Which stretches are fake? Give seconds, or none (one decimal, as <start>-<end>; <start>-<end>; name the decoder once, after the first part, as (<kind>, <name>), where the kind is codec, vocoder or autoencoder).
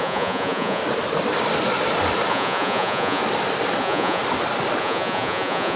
0.0-0.8 (vocoder, Vocos); 2.3-3.2; 3.8-4.2; 4.8-5.8